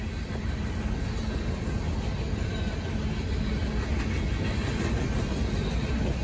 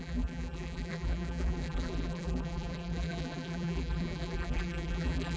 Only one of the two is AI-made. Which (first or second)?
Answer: second